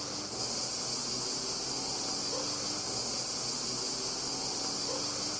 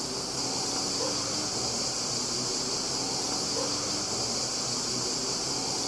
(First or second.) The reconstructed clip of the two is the second